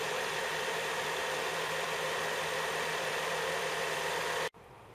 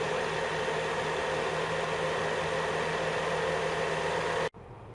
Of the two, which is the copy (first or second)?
first